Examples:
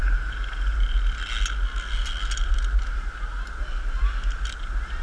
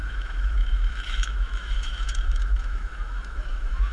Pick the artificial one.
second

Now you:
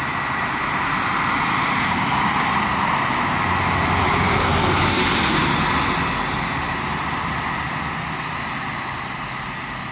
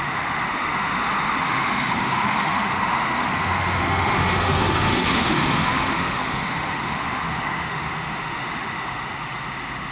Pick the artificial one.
second